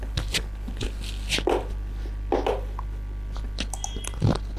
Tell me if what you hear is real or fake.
real